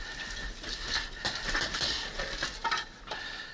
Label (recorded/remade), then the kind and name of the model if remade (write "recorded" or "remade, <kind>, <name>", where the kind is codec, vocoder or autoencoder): recorded